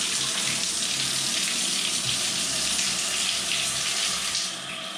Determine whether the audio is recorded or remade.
recorded